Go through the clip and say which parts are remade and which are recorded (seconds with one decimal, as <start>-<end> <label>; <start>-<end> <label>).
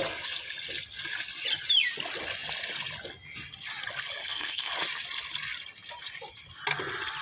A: 0.0-4.2 recorded; 4.2-4.7 remade; 4.7-7.2 recorded